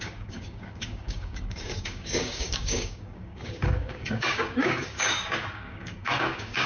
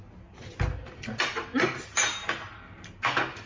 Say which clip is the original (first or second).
second